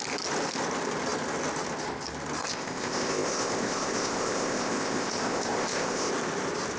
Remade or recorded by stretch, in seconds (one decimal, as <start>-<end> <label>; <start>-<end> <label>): 0.0-2.5 recorded; 2.5-6.1 remade; 6.1-6.8 recorded